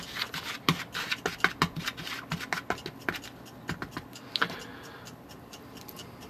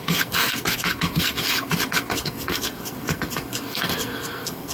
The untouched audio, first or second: first